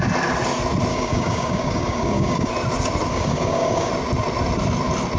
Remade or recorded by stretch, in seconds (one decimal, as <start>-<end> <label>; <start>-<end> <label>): 0.0-0.9 recorded; 0.9-2.5 remade; 2.5-3.1 recorded; 3.1-3.9 remade; 3.9-5.2 recorded